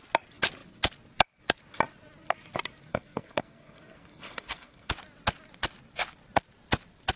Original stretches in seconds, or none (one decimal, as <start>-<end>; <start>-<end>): 0.0-2.9; 4.9-7.2